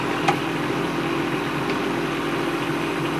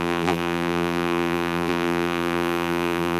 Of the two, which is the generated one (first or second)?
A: second